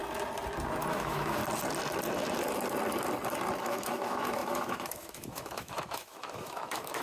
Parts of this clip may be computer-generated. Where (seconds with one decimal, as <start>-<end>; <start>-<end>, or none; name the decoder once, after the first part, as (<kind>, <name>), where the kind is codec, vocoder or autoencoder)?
0.9-1.4 (autoencoder, DAC-VAE); 3.6-7.0